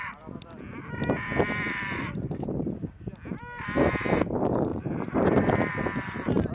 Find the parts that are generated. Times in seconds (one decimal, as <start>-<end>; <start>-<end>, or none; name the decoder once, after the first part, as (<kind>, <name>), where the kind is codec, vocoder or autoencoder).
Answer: 4.7-5.8 (vocoder, BigVGAN v2)